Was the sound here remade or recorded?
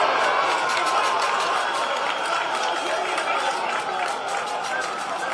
recorded